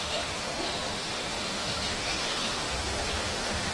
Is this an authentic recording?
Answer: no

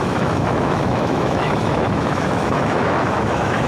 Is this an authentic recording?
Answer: no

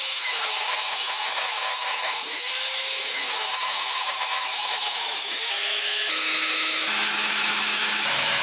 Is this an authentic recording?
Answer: no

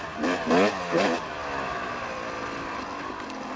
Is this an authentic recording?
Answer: yes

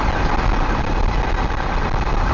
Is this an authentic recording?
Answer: yes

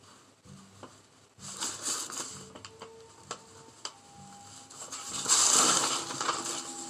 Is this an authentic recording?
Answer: yes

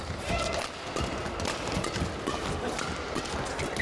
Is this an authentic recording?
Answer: yes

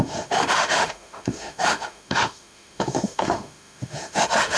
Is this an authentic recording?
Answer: no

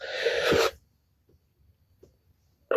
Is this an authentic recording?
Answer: yes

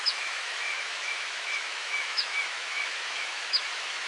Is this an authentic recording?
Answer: no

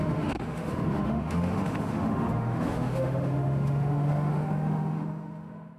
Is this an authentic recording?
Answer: no